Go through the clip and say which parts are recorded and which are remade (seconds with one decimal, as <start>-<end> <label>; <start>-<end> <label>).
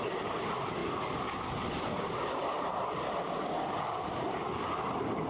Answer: 0.0-5.3 recorded